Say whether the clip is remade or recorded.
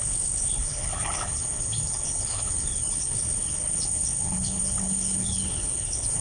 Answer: remade